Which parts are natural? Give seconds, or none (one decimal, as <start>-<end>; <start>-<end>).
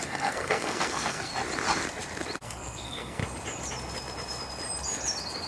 1.3-2.4; 3.2-5.5